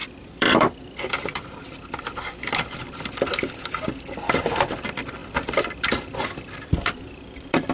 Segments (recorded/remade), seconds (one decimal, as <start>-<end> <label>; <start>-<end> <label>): 0.0-7.7 remade